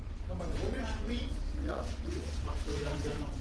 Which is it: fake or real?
fake